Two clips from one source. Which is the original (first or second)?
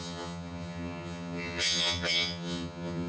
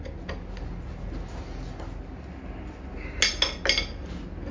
second